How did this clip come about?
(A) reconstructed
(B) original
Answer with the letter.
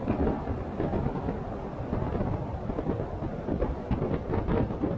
B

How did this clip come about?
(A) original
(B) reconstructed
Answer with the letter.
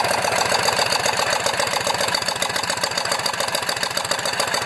A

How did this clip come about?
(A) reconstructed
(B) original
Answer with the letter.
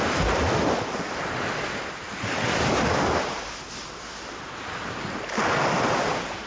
B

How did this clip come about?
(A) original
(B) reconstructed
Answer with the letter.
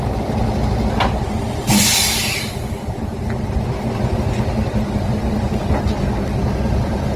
A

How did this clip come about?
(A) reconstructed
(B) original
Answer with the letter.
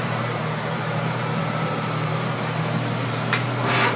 A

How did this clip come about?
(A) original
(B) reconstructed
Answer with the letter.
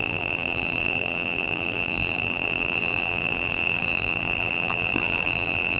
B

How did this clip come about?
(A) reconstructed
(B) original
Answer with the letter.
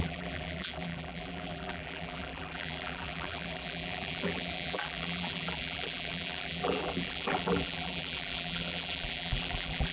A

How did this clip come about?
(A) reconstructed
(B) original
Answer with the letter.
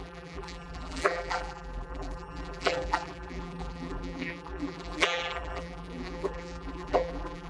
A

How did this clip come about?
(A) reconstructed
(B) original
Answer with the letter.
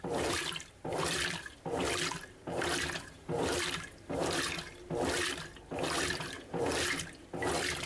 A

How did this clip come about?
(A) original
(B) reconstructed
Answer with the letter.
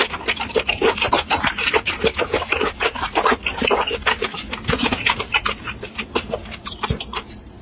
B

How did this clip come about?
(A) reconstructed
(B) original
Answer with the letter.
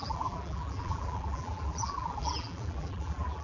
A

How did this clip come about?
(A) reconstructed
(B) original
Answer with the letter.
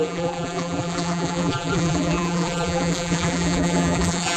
A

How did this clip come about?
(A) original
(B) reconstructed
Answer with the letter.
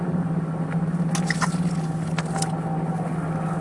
A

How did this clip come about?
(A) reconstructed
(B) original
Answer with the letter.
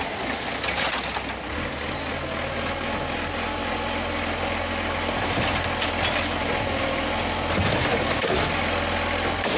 B